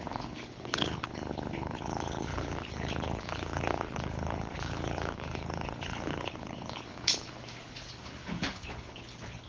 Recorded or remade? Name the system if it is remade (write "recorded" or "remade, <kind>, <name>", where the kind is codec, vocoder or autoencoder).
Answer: remade, codec, HILCodec